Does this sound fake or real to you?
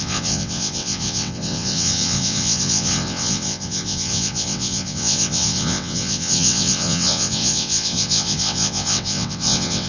fake